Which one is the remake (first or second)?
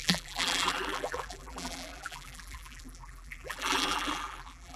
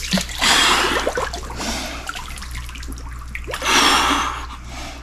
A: first